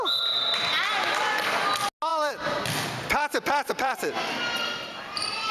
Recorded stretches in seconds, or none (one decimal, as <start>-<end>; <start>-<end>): 0.0-2.1